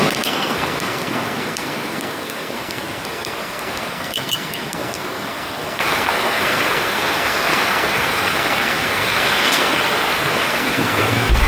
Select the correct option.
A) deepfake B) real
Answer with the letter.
A